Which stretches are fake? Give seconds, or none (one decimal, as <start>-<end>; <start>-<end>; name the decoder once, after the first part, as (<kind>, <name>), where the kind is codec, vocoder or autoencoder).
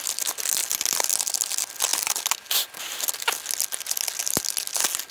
none